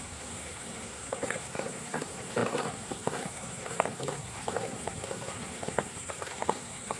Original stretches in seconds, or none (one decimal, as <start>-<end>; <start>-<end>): none